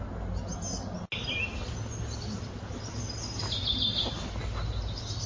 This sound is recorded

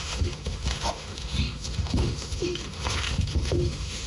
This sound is remade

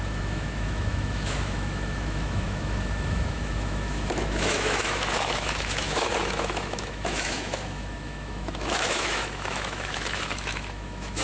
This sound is remade